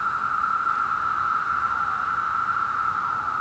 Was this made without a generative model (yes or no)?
yes